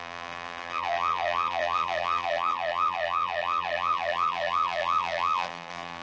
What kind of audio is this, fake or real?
fake